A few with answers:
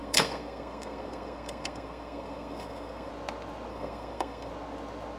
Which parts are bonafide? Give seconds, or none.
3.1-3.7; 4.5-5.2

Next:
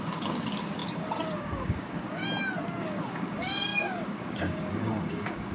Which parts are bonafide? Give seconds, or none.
2.2-2.8

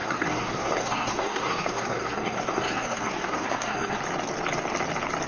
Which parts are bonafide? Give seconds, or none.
4.0-5.3

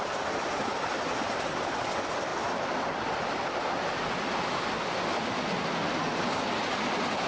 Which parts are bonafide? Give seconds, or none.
0.0-7.3

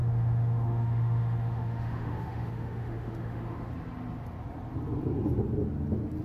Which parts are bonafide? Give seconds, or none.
3.7-6.2

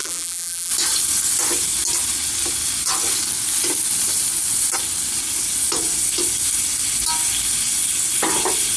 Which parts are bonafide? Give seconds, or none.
0.7-8.8

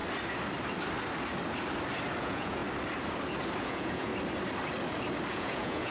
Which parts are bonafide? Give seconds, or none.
0.0-2.2; 2.6-3.6; 4.1-5.3

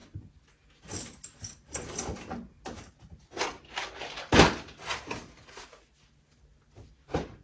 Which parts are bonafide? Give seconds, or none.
0.0-7.4